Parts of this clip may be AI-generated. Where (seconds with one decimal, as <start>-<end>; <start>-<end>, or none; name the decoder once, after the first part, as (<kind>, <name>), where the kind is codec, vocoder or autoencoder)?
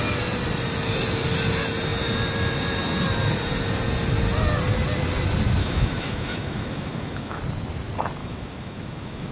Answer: 5.6-7.4 (autoencoder, DAC-VAE); 8.2-9.3